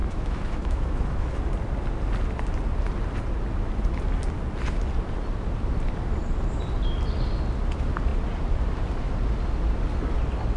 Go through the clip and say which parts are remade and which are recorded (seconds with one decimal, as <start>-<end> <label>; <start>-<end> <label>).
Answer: 0.0-1.4 remade; 1.4-10.6 recorded